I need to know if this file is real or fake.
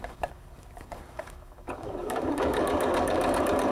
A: fake